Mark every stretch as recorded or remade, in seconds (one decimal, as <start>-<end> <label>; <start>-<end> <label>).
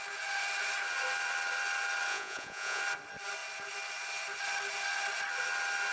0.0-2.1 recorded; 2.1-2.8 remade; 2.8-5.9 recorded